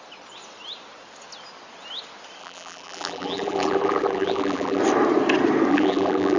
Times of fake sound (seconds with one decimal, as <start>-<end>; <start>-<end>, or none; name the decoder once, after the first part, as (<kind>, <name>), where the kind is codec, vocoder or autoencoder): 2.4-4.8 (vocoder, BigVGAN v2); 5.7-6.4